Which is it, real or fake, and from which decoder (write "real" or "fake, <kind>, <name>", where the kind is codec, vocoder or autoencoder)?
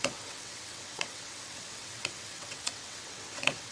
fake, vocoder, WaveNeXt